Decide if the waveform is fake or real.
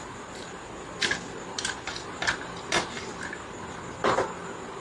real